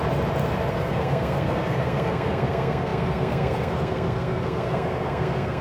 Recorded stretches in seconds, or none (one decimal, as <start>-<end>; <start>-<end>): 0.0-0.7